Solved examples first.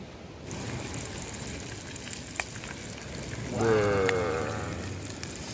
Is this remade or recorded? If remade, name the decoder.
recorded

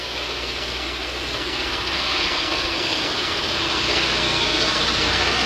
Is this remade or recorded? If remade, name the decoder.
remade, codec, SNAC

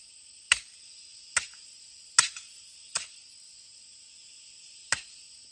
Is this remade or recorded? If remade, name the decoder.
recorded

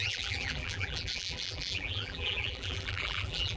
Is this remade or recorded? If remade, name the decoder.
remade, vocoder, BigVGAN v2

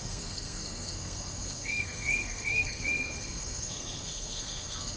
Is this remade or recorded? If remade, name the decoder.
remade, codec, SNAC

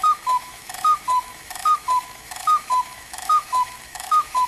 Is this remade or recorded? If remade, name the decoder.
remade, autoencoder, DAC-VAE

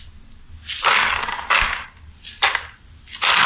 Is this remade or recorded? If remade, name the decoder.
recorded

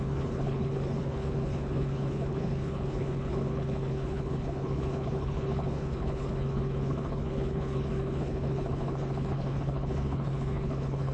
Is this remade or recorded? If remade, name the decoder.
remade, codec, HILCodec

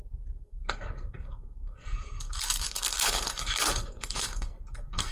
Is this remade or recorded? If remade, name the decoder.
remade, codec, SNAC